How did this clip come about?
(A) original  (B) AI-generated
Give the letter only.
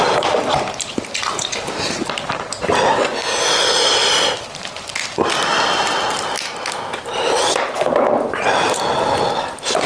A